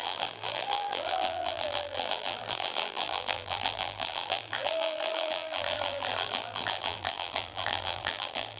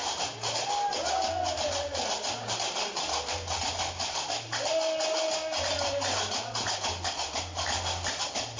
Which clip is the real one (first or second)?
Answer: second